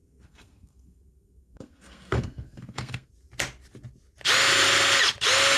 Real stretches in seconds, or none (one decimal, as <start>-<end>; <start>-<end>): 3.1-5.6